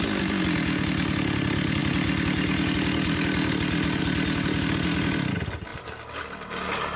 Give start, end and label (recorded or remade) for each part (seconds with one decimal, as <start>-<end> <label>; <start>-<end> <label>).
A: 0.0-7.0 recorded

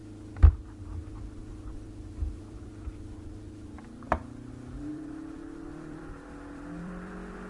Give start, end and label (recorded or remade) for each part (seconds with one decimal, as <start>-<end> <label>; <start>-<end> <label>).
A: 0.0-7.5 remade

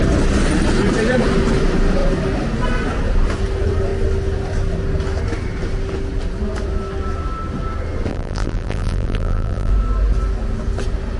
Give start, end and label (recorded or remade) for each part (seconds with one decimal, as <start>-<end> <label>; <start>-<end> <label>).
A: 0.0-8.1 recorded; 8.1-9.7 remade; 9.7-11.2 recorded

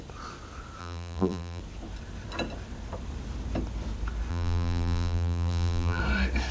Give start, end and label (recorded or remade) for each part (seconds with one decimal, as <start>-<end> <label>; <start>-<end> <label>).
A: 0.0-0.8 recorded; 0.8-1.6 remade; 1.6-4.3 recorded; 4.3-6.0 remade; 6.0-6.5 recorded